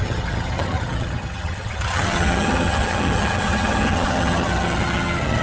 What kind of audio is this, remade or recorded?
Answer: remade